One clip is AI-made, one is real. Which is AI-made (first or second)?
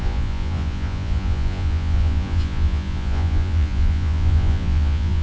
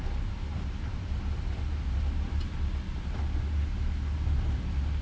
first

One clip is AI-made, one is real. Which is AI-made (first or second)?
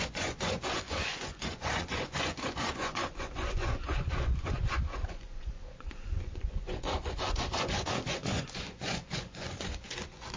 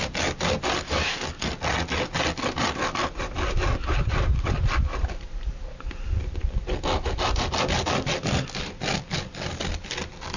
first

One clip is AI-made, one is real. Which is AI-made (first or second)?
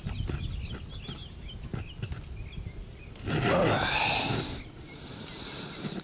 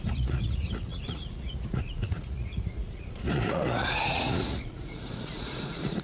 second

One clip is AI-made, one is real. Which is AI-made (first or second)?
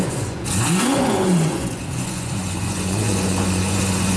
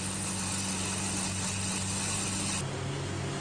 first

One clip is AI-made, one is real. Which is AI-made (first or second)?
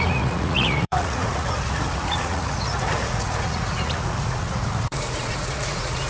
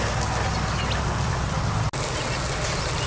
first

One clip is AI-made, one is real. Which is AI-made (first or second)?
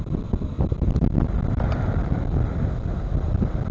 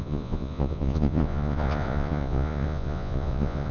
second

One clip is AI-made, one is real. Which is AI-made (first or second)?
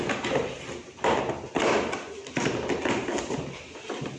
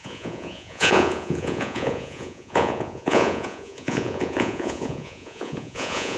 second